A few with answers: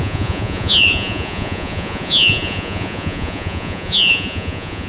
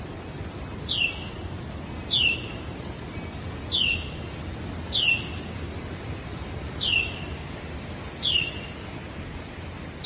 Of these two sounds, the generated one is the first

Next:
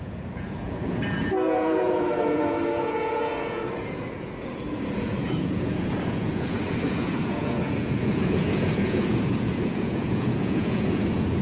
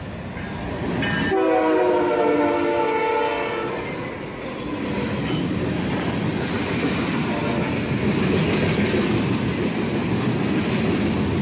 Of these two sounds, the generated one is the first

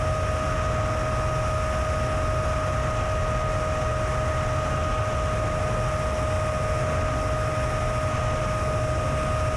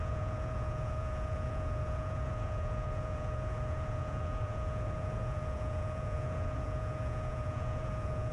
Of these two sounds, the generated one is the second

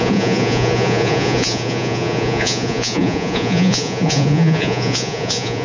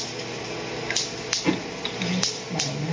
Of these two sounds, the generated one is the first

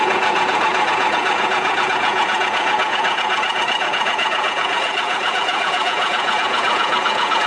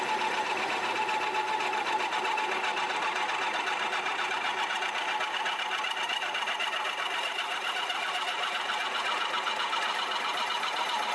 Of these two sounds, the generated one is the first